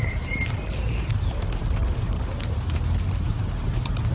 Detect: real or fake fake